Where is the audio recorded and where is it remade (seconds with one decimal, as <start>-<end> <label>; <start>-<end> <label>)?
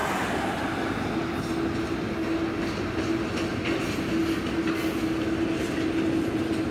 0.0-6.7 recorded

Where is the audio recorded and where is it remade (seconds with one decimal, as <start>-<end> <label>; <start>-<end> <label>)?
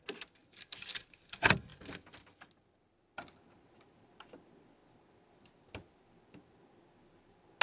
0.0-0.4 recorded; 0.4-1.0 remade; 1.0-1.7 recorded; 1.7-3.8 remade; 3.8-4.8 recorded; 4.8-6.8 remade; 6.8-7.6 recorded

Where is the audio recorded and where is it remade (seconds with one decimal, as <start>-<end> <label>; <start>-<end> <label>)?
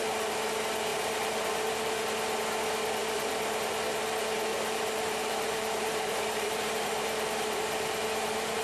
0.0-0.9 recorded; 0.9-1.7 remade; 1.7-4.5 recorded; 4.5-7.6 remade; 7.6-8.6 recorded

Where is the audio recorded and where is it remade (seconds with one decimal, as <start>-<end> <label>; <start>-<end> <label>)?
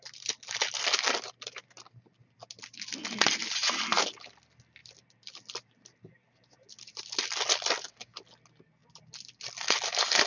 0.0-3.0 recorded; 3.0-3.7 remade; 3.7-4.8 recorded; 4.8-7.0 remade; 7.0-8.8 recorded; 8.8-9.8 remade; 9.8-10.3 recorded